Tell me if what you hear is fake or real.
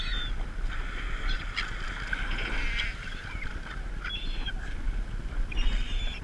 real